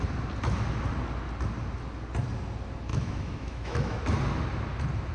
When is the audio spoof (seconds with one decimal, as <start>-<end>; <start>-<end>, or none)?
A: 2.9-4.0